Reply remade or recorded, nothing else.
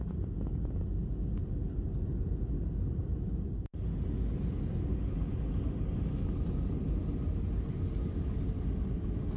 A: recorded